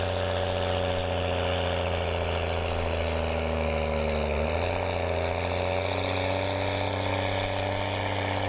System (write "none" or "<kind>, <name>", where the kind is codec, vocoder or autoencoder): none